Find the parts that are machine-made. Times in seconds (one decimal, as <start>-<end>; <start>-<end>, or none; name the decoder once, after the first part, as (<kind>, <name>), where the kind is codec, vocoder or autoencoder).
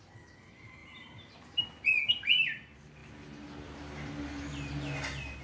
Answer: none